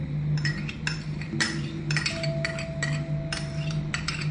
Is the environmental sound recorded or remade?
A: recorded